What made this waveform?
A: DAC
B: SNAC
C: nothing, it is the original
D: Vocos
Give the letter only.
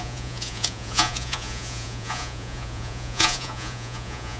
D